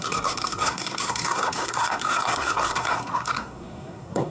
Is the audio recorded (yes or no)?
no